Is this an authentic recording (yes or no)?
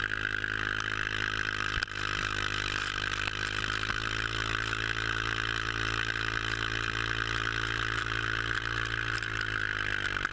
yes